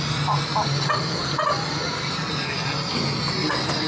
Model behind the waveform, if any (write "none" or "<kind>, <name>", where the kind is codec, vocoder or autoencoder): none